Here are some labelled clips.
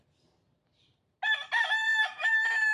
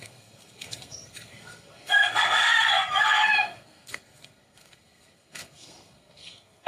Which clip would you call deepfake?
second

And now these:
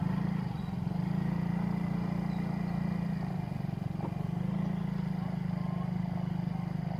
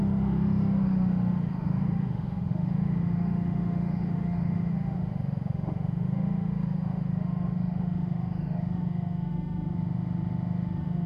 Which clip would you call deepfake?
second